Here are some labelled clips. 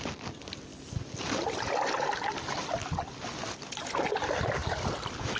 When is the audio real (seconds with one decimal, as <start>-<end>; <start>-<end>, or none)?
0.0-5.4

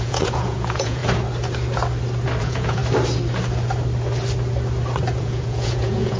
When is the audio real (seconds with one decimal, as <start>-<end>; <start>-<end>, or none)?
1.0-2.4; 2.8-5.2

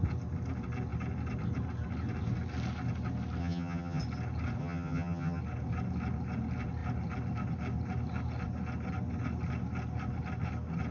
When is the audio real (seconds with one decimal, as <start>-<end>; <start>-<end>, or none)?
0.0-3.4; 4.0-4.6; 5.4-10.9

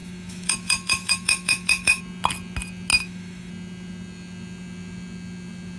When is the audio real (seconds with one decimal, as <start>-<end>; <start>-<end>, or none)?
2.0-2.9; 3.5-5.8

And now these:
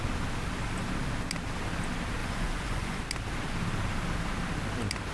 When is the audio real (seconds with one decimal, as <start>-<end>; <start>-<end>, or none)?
0.0-2.2; 3.0-5.1